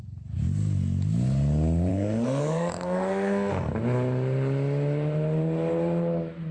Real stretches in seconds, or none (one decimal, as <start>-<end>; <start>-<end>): 0.0-1.9; 3.7-6.5